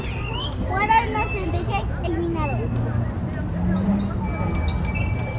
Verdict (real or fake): real